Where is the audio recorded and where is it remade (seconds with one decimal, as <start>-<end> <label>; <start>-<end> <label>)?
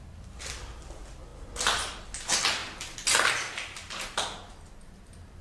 0.0-5.4 recorded